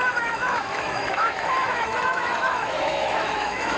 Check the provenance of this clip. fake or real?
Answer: fake